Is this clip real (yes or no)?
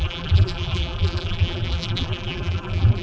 no